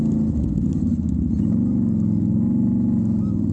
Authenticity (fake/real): real